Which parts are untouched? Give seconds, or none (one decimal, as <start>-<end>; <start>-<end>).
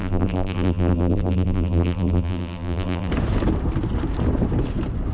3.1-5.1